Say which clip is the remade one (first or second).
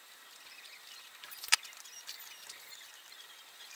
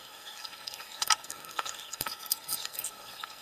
second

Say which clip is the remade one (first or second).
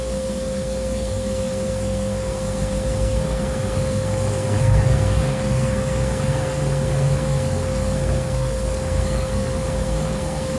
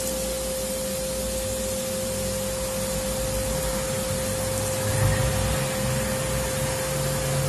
first